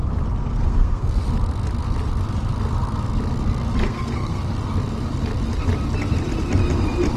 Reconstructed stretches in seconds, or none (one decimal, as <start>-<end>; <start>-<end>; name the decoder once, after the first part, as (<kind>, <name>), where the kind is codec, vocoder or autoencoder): 0.4-1.2 (codec, SNAC); 3.8-4.4